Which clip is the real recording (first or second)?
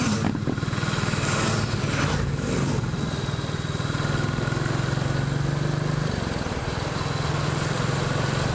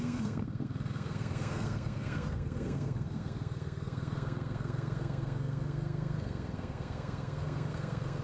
first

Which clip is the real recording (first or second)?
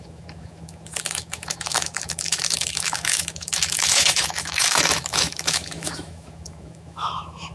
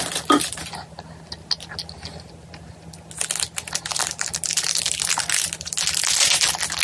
second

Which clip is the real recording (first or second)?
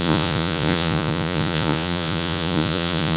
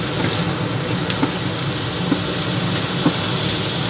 second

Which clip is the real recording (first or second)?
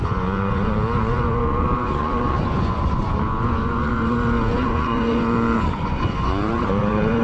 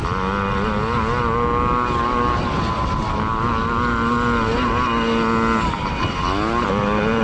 second